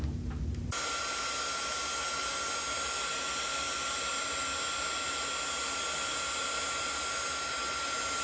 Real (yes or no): yes